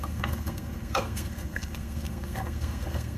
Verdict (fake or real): fake